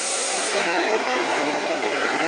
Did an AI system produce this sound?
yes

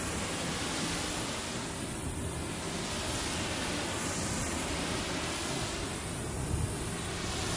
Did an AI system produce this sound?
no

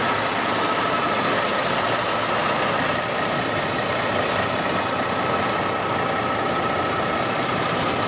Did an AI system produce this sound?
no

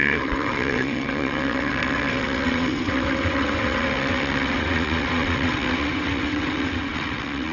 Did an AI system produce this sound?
yes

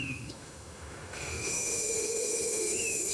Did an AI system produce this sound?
yes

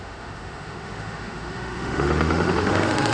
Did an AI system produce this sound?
yes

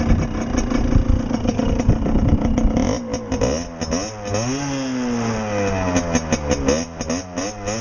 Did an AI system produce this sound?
no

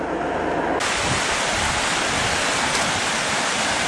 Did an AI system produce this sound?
no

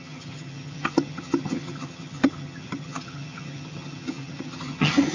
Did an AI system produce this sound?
yes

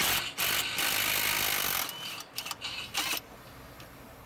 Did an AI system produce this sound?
no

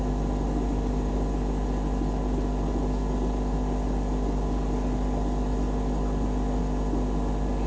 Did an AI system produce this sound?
no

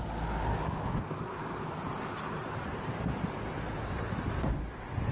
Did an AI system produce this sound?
no